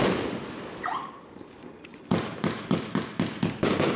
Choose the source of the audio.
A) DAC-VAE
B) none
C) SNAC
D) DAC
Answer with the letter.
B